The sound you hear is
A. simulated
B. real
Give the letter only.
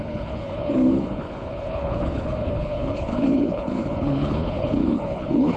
A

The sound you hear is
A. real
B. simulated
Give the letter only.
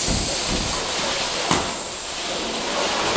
A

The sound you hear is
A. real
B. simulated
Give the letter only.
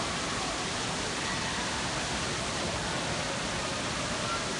A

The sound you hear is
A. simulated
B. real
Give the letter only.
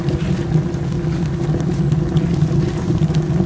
B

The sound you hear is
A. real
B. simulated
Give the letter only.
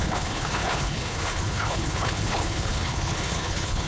B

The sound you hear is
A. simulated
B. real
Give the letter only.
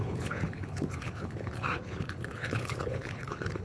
A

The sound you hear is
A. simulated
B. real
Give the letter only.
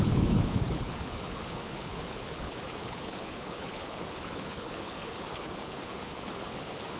A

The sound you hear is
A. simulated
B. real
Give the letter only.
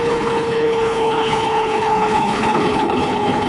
A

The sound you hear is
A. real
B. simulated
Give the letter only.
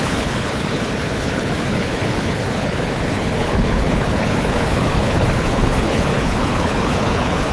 B